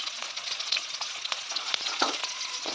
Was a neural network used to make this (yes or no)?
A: yes